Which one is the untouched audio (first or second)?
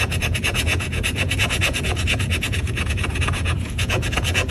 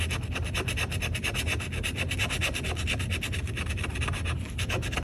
second